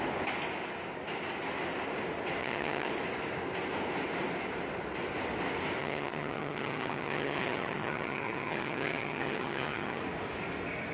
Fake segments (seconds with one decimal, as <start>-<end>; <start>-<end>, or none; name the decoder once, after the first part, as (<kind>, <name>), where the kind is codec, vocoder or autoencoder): 2.4-2.9 (vocoder, HiFi-GAN); 5.8-10.0